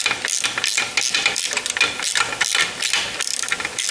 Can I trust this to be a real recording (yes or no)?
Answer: yes